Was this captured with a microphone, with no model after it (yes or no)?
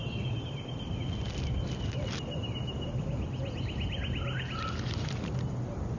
yes